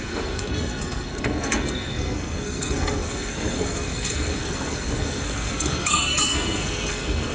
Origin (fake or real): fake